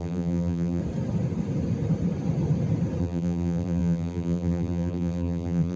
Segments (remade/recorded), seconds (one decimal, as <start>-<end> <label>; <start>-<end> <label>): 0.0-0.8 remade; 0.8-3.0 recorded; 3.0-5.8 remade